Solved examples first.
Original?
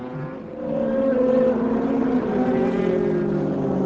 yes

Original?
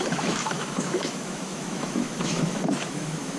no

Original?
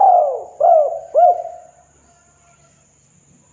yes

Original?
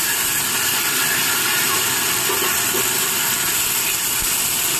yes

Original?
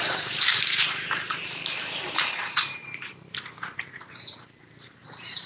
no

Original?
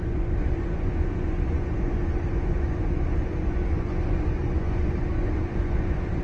no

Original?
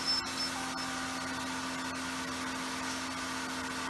yes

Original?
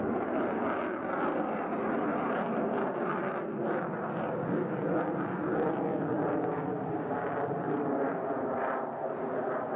yes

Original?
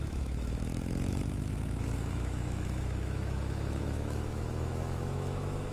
no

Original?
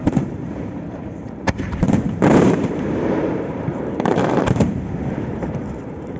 no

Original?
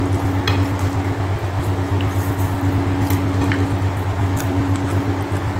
yes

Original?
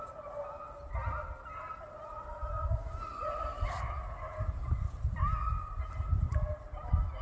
yes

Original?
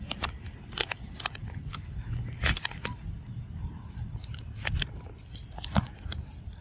yes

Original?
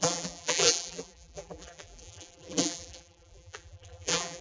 no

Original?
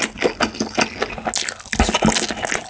yes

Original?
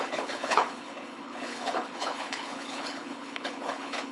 no